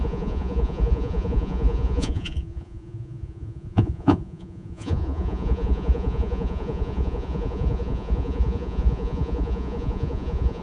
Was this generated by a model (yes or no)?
yes